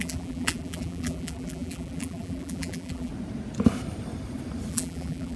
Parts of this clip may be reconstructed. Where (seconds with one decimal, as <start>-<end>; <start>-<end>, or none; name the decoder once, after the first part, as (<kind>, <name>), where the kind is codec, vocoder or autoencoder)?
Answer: 0.0-3.1 (vocoder, BigVGAN v2); 4.7-5.4